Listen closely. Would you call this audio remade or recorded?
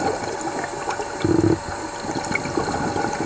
recorded